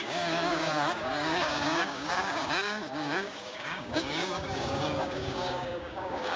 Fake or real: fake